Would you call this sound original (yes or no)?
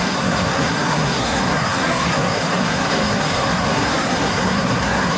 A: no